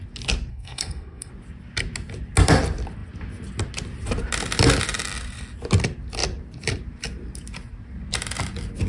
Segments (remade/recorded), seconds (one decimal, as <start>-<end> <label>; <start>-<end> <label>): 0.0-0.5 recorded; 0.5-1.3 remade; 1.3-8.9 recorded